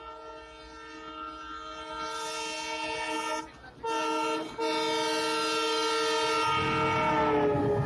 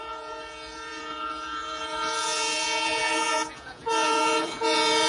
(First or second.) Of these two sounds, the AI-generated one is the second